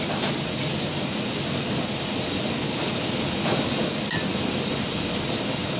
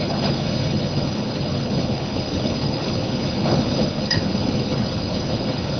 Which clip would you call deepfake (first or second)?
second